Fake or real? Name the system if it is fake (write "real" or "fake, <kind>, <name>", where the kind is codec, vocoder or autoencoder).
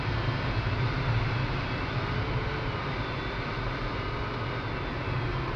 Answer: real